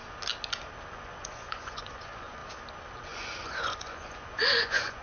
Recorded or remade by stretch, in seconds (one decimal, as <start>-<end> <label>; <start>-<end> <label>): 0.0-0.9 recorded; 0.9-2.4 remade; 2.4-3.0 recorded; 3.0-5.0 remade